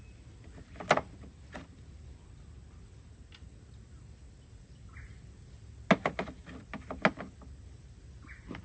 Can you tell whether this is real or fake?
real